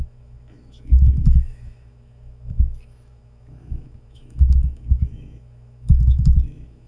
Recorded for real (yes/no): no